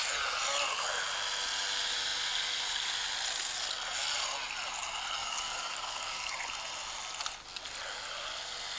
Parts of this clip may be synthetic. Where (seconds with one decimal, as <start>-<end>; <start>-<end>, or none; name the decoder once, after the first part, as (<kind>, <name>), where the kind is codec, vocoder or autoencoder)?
5.2-6.3 (codec, DAC)